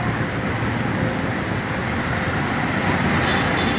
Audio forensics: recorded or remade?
recorded